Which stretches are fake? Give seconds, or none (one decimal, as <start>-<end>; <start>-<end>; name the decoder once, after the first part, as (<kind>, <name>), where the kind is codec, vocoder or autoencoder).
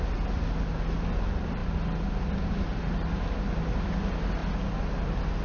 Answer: none